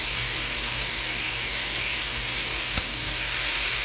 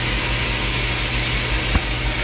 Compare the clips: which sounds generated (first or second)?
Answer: first